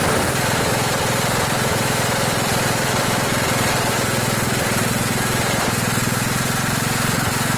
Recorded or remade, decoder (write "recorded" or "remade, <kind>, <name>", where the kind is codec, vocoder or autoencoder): remade, vocoder, BigVGAN v2